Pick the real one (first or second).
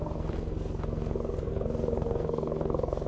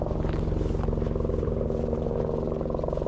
second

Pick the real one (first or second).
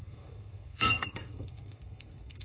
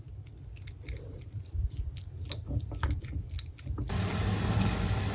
second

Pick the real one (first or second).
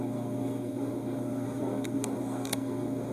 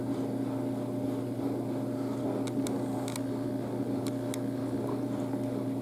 second